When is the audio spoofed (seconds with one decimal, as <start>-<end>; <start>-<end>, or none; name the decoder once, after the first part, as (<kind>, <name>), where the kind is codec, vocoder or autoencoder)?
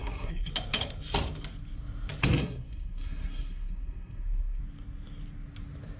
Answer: 0.0-0.5 (codec, SNAC); 2.3-4.6